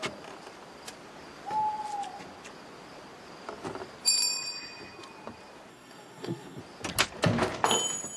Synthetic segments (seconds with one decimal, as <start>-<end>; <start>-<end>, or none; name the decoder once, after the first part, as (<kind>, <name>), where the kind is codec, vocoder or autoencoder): 5.7-6.6 (codec, SNAC)